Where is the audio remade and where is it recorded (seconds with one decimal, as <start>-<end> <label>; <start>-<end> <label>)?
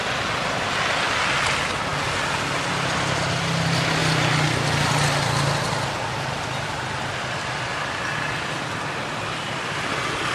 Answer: 0.0-10.3 recorded